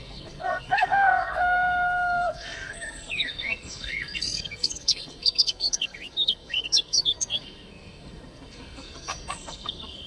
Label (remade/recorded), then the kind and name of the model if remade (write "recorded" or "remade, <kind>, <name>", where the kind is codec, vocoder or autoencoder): remade, codec, SNAC